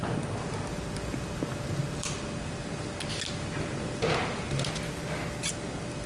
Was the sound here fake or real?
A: real